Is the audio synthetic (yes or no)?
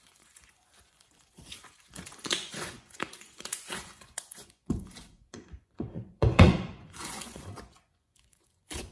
yes